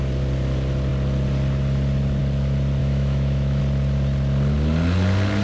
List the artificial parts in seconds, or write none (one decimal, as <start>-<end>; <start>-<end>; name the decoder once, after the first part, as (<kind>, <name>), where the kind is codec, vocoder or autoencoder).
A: 2.8-3.6 (autoencoder, DAC-VAE)